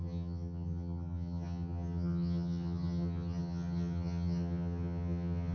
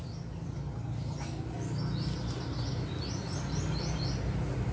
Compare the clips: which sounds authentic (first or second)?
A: second